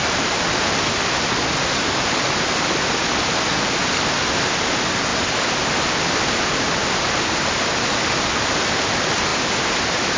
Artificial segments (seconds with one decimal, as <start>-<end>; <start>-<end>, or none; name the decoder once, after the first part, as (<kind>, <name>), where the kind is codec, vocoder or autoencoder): 9.3-10.2 (vocoder, BigVGAN v2)